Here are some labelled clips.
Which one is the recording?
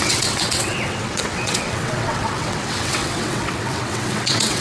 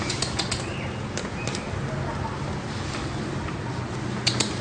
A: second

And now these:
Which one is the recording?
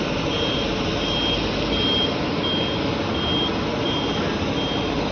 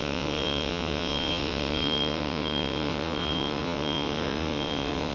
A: first